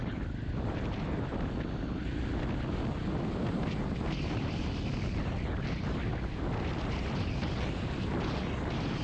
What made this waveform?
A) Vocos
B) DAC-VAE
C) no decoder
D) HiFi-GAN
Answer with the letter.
C